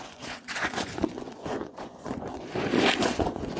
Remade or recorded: remade